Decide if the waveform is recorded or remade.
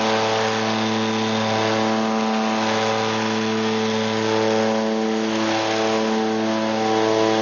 recorded